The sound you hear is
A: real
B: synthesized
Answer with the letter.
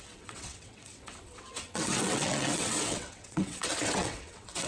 B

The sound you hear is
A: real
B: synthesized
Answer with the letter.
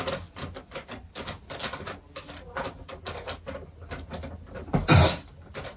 A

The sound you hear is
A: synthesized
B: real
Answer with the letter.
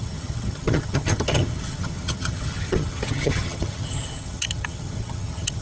A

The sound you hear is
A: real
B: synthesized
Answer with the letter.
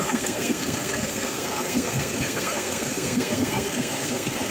B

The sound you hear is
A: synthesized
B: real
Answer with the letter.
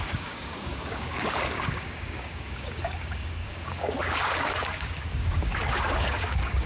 A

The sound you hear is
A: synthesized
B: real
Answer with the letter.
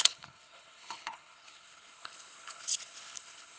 A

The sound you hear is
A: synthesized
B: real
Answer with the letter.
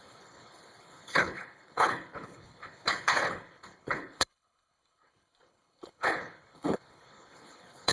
A